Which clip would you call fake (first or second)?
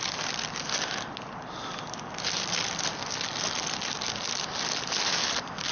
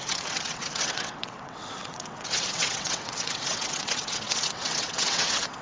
second